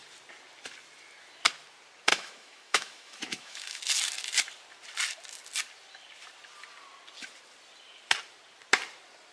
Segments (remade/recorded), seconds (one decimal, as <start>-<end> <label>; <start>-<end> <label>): 0.0-2.1 recorded; 2.1-3.8 remade; 3.8-9.3 recorded